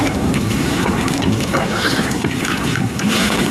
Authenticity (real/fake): fake